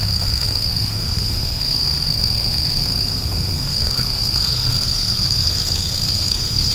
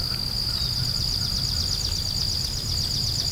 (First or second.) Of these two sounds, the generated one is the first